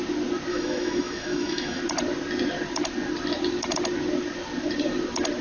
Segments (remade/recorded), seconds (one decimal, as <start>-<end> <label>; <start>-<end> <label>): 0.0-0.5 recorded; 0.5-1.8 remade; 1.8-5.4 recorded